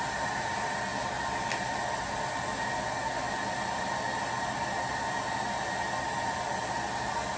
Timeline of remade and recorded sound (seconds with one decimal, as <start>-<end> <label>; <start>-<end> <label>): 0.0-7.4 recorded